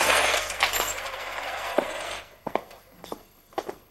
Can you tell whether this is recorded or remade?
remade